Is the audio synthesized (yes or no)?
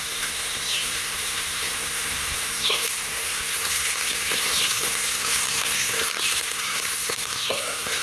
yes